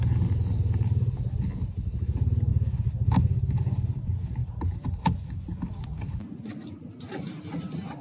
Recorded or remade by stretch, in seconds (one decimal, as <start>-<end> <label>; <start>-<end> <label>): 0.0-8.0 recorded